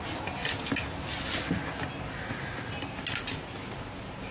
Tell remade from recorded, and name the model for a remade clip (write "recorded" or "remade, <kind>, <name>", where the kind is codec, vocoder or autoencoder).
recorded